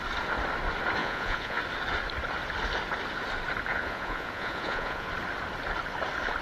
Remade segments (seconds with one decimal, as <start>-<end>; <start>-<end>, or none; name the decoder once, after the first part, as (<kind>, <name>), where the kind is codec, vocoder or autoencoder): 1.0-1.6 (vocoder, Vocos); 3.7-5.1